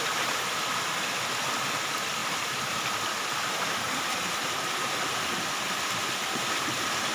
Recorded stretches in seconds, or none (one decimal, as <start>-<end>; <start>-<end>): 0.0-7.1